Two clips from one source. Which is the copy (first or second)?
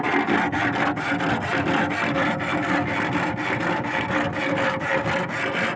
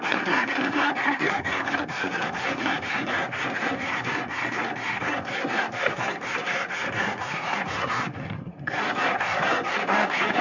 second